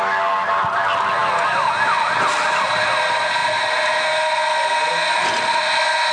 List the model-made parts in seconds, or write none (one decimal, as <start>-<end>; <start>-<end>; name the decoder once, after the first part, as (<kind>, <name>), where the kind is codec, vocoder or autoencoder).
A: none